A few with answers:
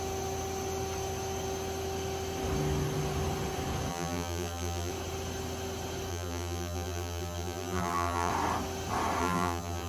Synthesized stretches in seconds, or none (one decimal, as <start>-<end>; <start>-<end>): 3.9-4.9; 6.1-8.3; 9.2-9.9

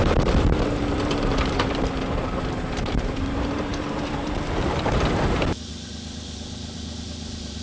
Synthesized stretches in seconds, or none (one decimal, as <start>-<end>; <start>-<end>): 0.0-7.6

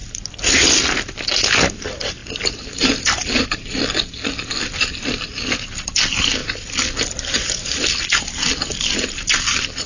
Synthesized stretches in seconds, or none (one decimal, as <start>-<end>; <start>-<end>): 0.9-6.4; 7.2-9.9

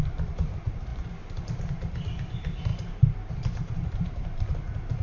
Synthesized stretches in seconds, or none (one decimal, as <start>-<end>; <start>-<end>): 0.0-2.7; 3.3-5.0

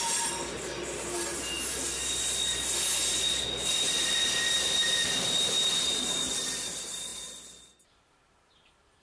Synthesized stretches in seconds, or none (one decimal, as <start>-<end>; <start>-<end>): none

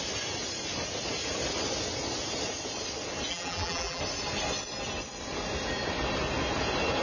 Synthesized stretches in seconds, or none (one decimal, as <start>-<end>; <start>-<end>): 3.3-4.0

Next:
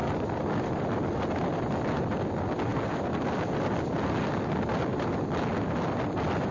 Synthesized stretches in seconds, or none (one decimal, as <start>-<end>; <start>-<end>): none